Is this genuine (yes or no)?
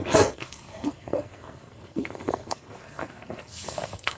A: no